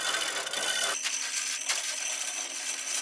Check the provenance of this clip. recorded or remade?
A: recorded